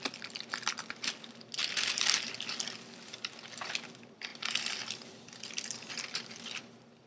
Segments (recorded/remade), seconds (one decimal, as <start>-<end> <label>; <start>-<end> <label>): 0.0-7.1 recorded

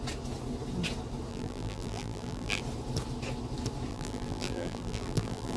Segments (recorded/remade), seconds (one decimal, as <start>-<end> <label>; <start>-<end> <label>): 0.0-1.3 recorded; 1.3-2.6 remade; 2.6-3.9 recorded; 3.9-5.6 remade

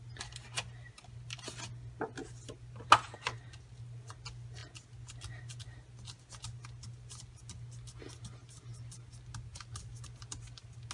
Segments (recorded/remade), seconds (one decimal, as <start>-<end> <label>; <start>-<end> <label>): 0.0-9.5 recorded; 9.5-10.9 remade

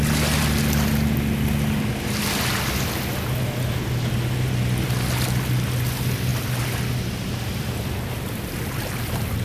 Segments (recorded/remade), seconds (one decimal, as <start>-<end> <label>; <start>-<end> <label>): 0.0-9.4 recorded